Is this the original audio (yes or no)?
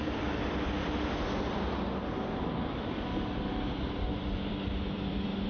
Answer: no